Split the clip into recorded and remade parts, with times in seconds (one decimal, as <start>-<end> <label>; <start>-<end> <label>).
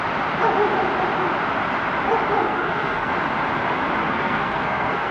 0.0-2.4 recorded; 2.4-3.1 remade; 3.1-4.0 recorded; 4.0-5.1 remade